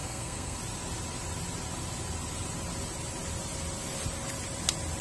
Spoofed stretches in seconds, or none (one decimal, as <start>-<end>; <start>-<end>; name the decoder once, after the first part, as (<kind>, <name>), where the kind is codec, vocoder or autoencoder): 0.0-0.6 (codec, SNAC)